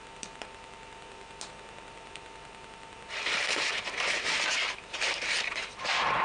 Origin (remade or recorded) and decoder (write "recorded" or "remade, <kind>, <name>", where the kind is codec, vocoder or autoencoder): remade, vocoder, BigVGAN v2